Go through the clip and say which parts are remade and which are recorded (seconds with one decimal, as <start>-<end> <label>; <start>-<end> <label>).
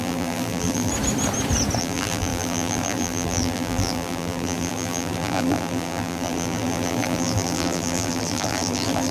0.0-0.9 remade; 0.9-1.8 recorded; 1.8-9.1 remade